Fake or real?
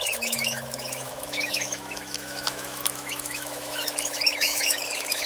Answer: fake